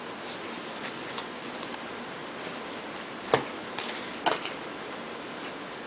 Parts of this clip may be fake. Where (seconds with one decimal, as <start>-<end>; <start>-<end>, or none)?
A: 0.7-1.5